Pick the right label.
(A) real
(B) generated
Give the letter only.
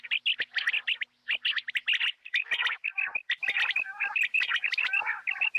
A